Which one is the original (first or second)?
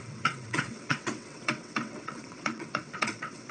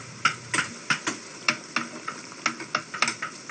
second